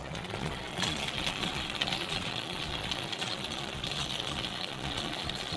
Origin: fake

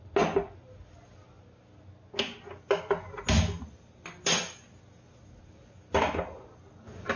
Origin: real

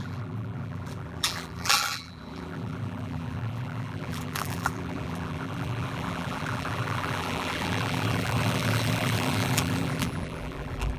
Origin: fake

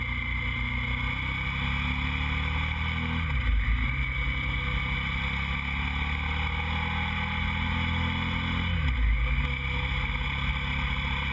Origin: real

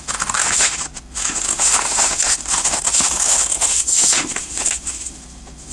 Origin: fake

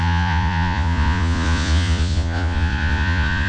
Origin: fake